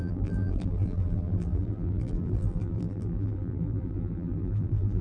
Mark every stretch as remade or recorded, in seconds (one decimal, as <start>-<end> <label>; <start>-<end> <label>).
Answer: 0.0-5.0 remade